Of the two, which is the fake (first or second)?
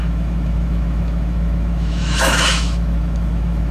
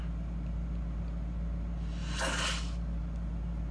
first